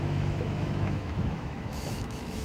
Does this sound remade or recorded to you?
remade